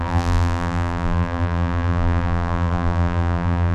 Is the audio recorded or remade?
remade